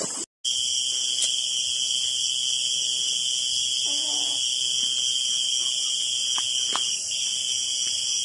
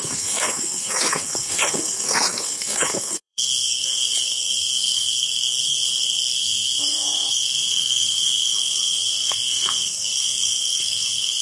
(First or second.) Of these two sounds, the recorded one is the first